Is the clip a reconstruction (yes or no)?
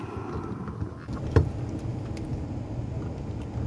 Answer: no